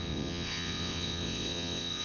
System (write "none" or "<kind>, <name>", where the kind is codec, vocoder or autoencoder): vocoder, WaveNeXt